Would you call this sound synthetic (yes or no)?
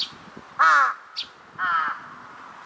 no